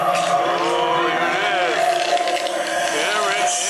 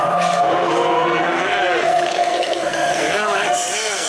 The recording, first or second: first